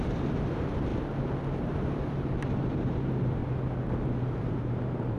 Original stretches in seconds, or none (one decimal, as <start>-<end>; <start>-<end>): 0.9-1.6; 3.4-4.4